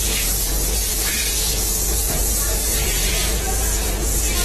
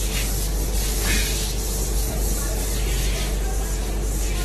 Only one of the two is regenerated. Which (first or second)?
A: first